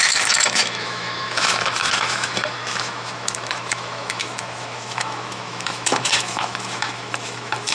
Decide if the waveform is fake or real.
fake